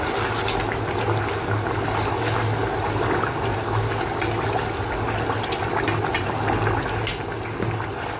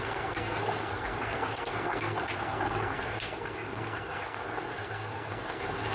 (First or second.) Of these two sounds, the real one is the first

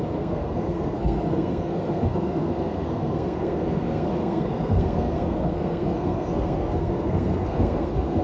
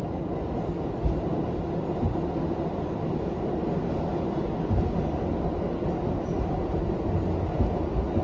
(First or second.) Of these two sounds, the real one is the second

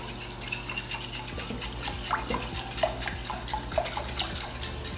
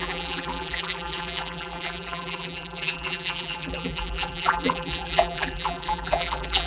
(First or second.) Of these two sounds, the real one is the first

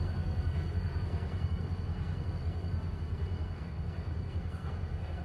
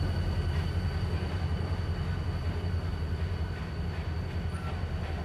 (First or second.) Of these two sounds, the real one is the second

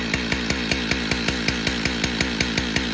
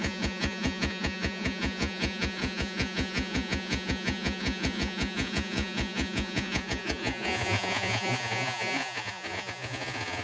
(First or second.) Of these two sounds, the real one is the first